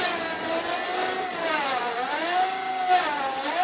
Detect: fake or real real